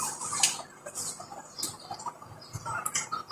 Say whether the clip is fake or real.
fake